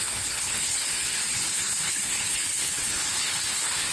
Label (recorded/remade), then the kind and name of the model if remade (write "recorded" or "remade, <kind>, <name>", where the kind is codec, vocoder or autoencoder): remade, codec, HILCodec